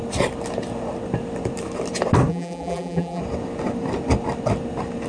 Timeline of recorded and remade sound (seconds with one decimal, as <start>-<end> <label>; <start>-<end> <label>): 0.0-2.3 recorded; 2.3-3.2 remade; 3.2-5.1 recorded